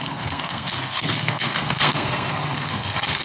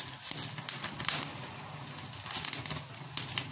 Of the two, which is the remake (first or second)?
first